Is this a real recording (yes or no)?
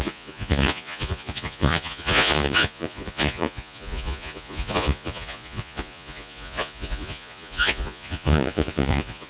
no